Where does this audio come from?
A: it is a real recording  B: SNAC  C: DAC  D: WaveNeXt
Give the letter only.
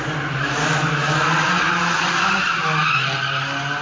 A